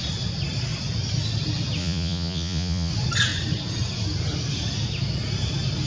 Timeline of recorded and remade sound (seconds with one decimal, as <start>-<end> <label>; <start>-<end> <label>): 0.0-1.8 recorded; 1.8-2.9 remade; 2.9-5.9 recorded